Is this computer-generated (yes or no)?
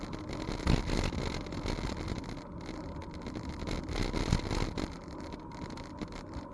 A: no